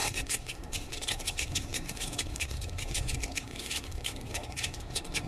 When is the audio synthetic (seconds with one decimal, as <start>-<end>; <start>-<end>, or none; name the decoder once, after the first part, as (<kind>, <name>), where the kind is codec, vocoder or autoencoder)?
0.0-5.3 (codec, SNAC)